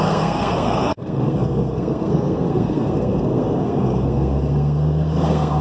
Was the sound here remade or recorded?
remade